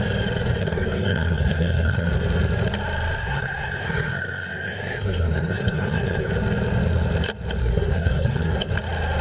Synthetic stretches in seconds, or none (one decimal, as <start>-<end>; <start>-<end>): 0.6-2.1; 3.2-6.3; 7.6-8.7